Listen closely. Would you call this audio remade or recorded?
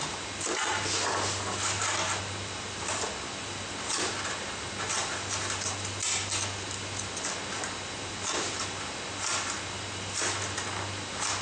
recorded